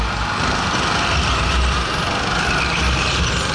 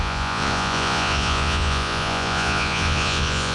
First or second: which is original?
first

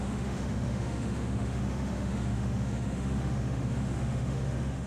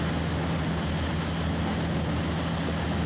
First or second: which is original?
second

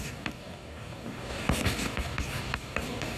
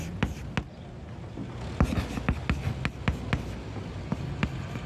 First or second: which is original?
second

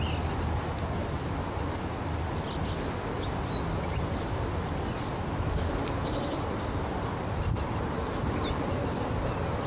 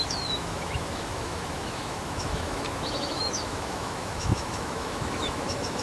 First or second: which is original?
first